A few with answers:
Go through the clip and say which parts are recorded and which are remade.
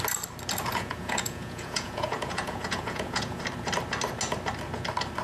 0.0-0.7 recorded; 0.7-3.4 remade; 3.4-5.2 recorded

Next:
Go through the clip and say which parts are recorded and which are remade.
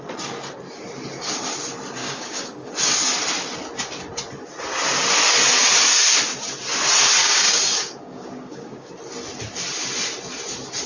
0.0-2.0 recorded; 2.0-2.7 remade; 2.7-7.2 recorded; 7.2-8.9 remade; 8.9-10.9 recorded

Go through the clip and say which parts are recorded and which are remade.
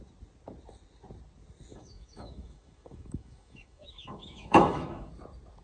0.0-1.7 recorded; 1.7-5.1 remade; 5.1-5.6 recorded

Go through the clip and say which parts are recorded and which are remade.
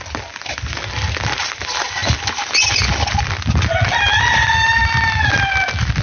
0.0-6.0 recorded